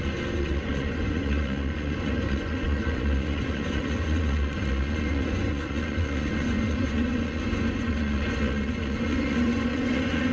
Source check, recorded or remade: remade